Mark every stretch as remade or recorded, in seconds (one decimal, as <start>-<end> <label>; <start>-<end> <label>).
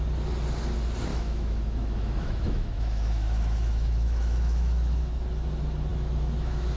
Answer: 0.0-1.1 recorded; 1.1-5.2 remade; 5.2-5.9 recorded; 5.9-6.8 remade